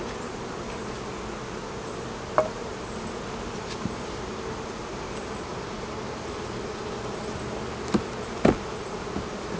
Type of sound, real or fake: real